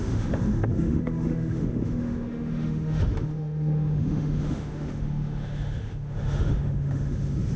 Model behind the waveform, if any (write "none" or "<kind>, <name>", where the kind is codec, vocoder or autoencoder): autoencoder, DAC-VAE